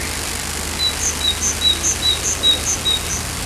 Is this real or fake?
real